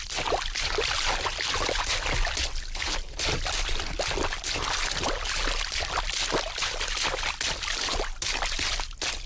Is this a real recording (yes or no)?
yes